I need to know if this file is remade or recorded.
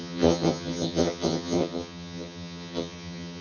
remade